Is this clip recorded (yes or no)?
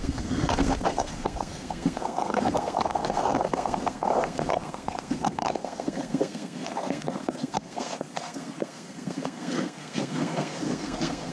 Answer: no